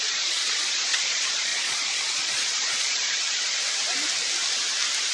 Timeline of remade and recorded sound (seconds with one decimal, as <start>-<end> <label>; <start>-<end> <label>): 0.0-3.6 remade; 3.6-5.1 recorded